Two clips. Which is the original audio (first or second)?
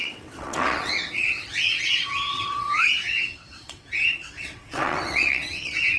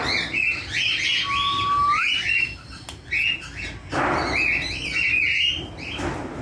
second